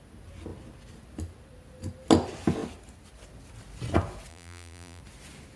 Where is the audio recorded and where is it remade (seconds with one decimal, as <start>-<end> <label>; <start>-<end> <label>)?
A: 0.0-4.3 recorded; 4.3-5.0 remade; 5.0-5.6 recorded